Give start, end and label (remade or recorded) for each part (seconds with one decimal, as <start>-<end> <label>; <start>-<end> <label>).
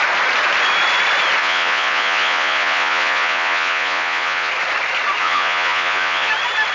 0.0-1.4 recorded; 1.4-4.5 remade; 4.5-5.2 recorded; 5.2-6.3 remade; 6.3-6.7 recorded